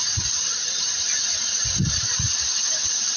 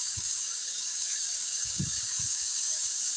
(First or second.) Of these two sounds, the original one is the first